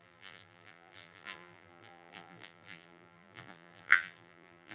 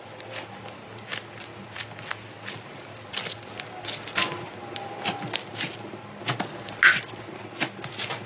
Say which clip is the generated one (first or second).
first